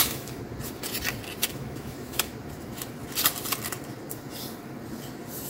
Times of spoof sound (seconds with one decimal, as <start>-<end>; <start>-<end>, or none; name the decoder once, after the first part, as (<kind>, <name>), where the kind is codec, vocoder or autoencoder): 0.0-0.4 (autoencoder, DAC-VAE); 1.5-2.3